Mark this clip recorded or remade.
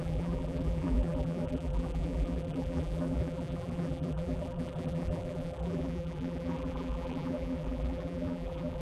remade